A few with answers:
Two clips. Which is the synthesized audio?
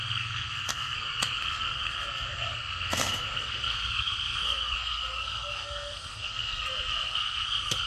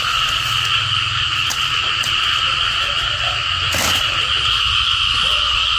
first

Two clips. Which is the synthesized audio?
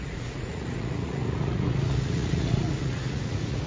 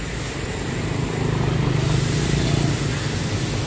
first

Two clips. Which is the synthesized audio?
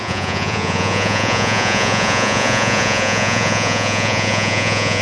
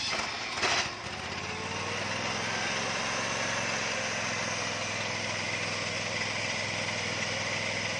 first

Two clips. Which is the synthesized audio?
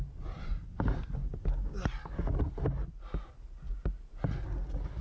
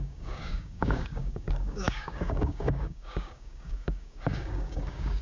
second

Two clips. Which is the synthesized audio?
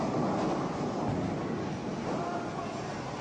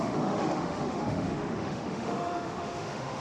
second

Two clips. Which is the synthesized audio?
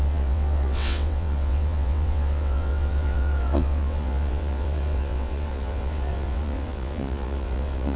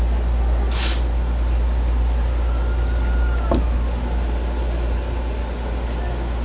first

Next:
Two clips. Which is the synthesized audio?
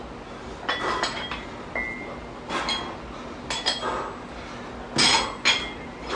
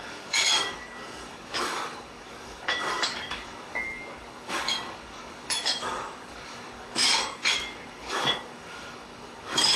second